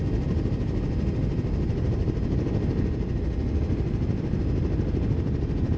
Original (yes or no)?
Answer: yes